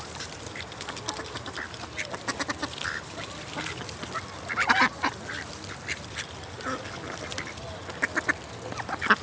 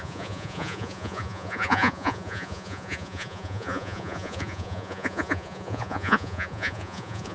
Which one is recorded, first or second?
first